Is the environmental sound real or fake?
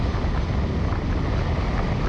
real